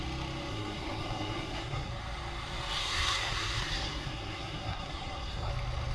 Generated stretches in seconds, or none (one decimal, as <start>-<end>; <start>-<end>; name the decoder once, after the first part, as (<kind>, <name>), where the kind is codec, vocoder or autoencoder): 0.5-1.9 (codec, SNAC); 2.8-5.5